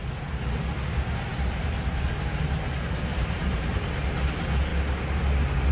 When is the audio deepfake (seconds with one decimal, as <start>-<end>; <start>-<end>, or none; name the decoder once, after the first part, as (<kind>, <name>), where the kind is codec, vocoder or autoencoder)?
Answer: 3.1-3.8 (vocoder, BigVGAN v2)